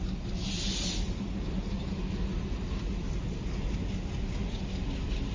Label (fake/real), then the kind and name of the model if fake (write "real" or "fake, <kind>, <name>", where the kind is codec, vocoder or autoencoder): real